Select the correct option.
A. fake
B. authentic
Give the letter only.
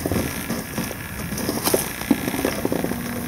B